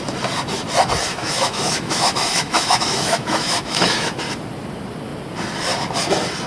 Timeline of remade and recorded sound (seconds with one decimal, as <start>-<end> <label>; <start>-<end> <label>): 0.0-1.1 recorded; 1.1-4.2 remade; 4.2-6.5 recorded